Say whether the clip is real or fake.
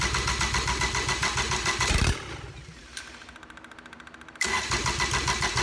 real